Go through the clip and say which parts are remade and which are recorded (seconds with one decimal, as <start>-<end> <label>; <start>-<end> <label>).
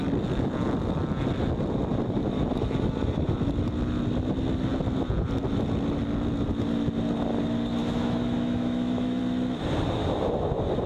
0.0-7.8 recorded; 7.8-9.2 remade; 9.2-10.9 recorded